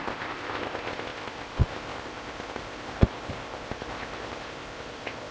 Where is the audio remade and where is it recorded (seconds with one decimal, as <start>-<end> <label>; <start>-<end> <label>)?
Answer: 0.0-5.3 remade